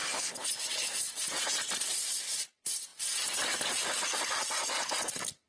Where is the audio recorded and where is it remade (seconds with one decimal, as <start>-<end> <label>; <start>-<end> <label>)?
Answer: 0.0-5.5 recorded